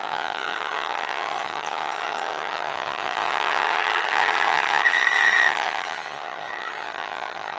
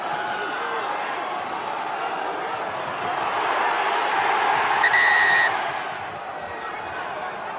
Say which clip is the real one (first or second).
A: second